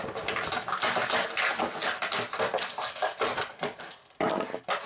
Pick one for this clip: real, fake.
real